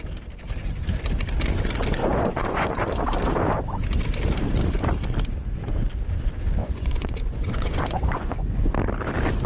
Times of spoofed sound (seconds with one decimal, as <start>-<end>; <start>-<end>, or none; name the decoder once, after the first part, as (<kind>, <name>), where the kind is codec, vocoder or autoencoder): 2.0-2.9 (vocoder, Vocos); 6.6-8.7